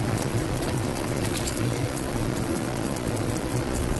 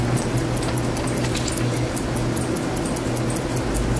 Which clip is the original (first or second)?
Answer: second